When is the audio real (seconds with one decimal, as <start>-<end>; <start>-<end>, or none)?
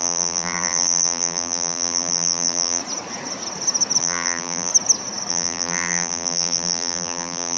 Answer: 2.8-4.0; 4.7-5.3